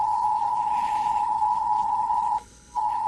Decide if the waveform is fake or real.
fake